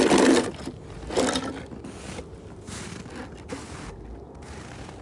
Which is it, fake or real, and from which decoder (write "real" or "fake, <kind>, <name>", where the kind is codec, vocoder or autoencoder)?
real